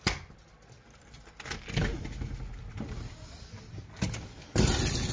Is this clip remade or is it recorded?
recorded